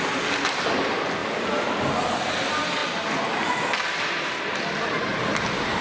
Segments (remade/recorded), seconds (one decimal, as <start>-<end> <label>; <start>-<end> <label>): 0.0-5.8 recorded